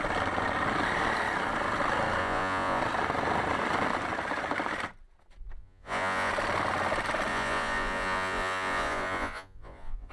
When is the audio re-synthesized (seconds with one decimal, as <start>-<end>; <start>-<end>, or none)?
2.2-2.8; 5.6-6.3; 7.3-10.1